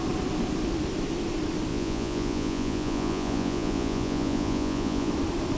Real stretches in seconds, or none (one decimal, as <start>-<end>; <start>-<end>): 0.0-1.7; 5.1-5.6